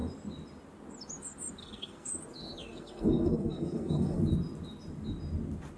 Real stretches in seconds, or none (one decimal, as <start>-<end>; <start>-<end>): 0.0-1.6; 2.1-2.6; 4.2-5.8

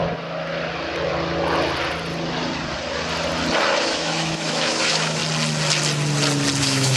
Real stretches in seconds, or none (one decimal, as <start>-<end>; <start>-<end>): 0.0-3.8; 5.2-6.6

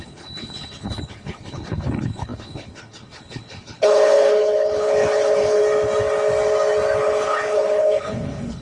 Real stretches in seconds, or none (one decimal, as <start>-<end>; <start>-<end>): 5.6-7.0

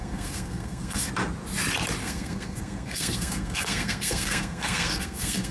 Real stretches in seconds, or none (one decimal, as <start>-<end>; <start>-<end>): 1.1-2.0

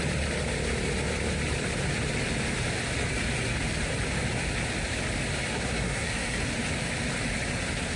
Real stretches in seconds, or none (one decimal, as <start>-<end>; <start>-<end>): 0.0-5.5; 6.4-8.0